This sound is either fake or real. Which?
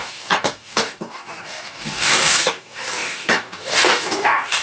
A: fake